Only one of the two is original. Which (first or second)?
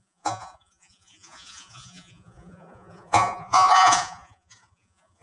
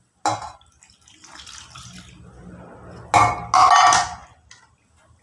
second